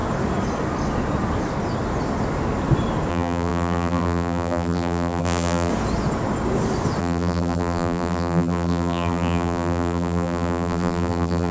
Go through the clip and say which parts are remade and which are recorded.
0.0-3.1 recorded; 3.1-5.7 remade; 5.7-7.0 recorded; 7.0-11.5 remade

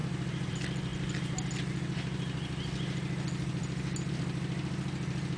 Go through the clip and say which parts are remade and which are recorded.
0.0-0.5 remade; 0.5-5.4 recorded

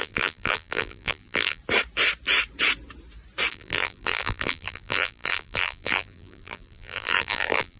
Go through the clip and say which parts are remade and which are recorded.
0.0-1.6 remade; 1.6-3.5 recorded; 3.5-7.8 remade

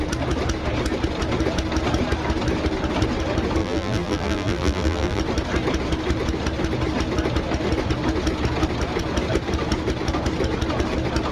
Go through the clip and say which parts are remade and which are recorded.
0.0-3.6 recorded; 3.6-5.2 remade; 5.2-11.3 recorded

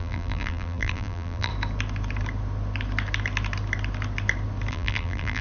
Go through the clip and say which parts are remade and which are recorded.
0.0-1.5 remade; 1.5-4.7 recorded; 4.7-5.4 remade

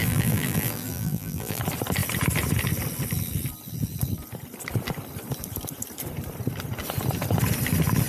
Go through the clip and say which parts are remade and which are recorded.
0.0-1.6 remade; 1.6-8.1 recorded

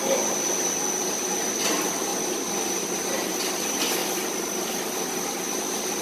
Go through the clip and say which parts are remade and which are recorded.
0.0-2.1 recorded; 2.1-3.4 remade; 3.4-4.0 recorded; 4.0-5.4 remade; 5.4-6.0 recorded

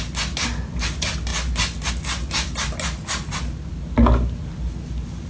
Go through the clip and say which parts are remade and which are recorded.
0.0-5.3 recorded